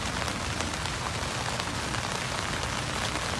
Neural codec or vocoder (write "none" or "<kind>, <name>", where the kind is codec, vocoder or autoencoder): none